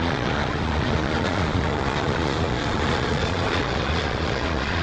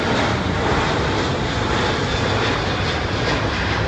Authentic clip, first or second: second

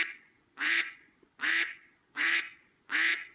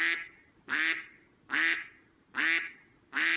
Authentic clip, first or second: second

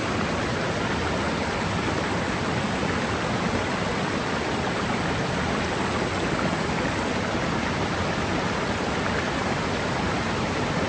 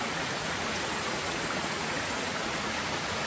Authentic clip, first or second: first